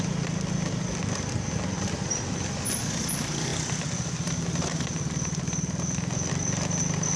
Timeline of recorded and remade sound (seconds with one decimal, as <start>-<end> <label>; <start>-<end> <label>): 0.0-7.2 recorded